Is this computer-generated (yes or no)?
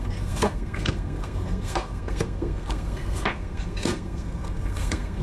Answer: yes